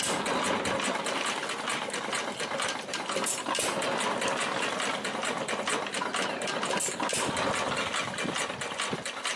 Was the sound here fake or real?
real